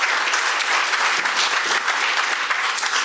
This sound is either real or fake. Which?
real